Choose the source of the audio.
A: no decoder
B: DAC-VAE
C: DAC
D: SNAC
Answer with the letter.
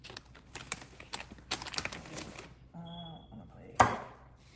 A